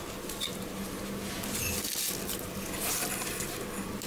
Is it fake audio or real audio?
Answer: real